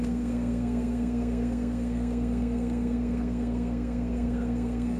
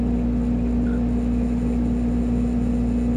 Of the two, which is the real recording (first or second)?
second